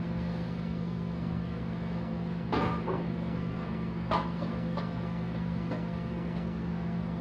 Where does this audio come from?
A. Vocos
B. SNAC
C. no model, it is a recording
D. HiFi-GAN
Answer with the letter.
B